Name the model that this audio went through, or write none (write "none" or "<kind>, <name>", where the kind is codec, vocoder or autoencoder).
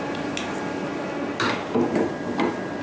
none